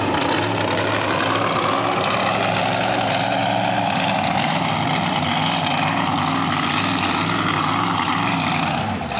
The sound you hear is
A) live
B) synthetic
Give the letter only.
A